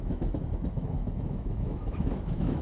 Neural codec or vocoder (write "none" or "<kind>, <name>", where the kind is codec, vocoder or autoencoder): autoencoder, DAC-VAE